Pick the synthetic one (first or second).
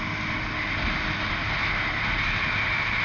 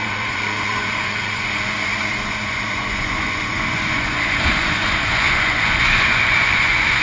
second